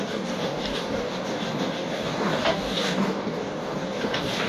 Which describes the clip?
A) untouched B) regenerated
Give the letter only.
B